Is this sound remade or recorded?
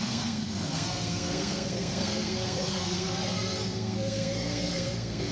remade